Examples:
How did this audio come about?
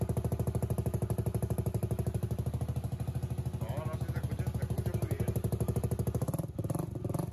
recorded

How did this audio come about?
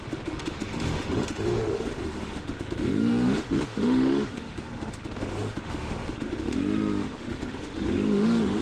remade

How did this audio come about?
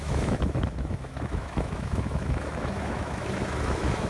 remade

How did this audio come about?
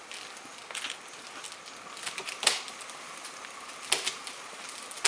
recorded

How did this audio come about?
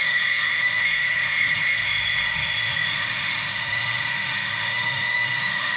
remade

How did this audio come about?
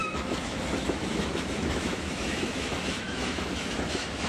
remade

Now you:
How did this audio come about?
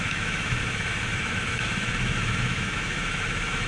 remade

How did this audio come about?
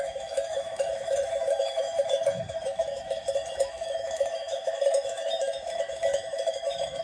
remade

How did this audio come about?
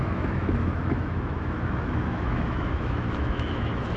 remade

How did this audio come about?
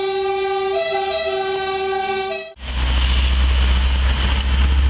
recorded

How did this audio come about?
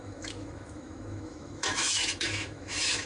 remade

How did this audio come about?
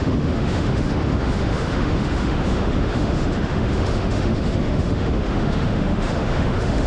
remade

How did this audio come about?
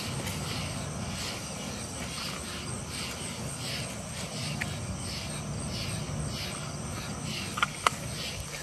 recorded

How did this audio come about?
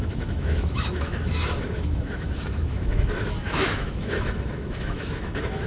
remade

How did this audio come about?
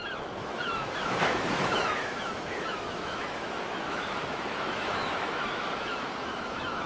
remade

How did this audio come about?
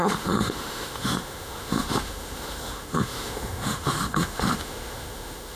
remade